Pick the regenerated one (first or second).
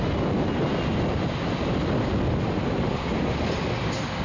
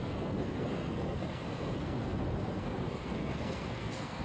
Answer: second